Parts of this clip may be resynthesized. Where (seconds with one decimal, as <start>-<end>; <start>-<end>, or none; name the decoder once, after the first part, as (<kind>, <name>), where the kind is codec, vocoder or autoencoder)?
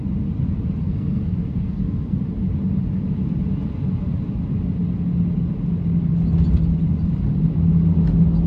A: 0.8-2.2 (codec, SNAC)